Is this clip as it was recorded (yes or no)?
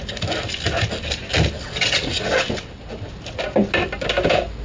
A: yes